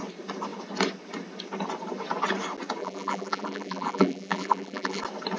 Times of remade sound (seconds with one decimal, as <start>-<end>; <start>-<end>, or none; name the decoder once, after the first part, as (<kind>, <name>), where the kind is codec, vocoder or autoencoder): 2.8-5.0 (vocoder, BigVGAN v2)